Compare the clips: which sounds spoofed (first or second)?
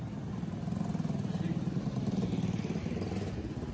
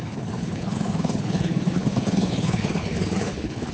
second